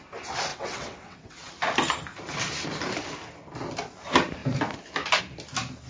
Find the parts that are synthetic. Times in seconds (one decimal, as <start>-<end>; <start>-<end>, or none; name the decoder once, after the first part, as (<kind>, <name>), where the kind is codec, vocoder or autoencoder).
0.5-1.5 (vocoder, WaveNeXt)